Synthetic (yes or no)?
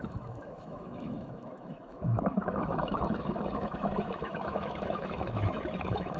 yes